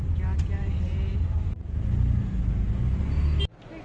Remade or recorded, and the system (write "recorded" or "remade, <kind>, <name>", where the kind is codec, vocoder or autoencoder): recorded